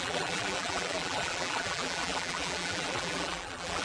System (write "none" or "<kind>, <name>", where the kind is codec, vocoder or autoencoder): vocoder, BigVGAN v2